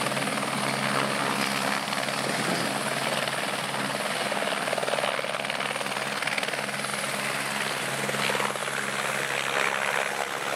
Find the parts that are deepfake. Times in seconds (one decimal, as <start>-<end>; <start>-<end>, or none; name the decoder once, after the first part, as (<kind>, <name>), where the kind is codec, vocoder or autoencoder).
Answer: none